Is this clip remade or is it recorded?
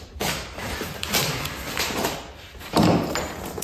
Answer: remade